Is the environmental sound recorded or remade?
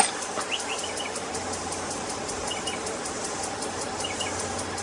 recorded